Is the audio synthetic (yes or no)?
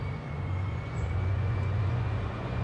yes